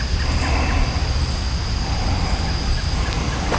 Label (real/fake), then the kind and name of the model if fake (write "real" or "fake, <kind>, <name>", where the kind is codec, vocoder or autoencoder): real